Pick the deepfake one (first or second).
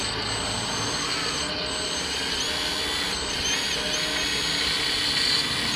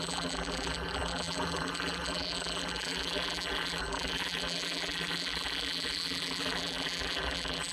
second